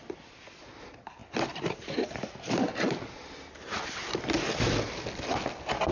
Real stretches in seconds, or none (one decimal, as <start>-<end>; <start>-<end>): 0.0-5.9